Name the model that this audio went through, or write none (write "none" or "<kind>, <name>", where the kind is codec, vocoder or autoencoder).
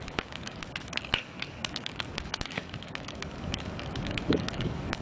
codec, DAC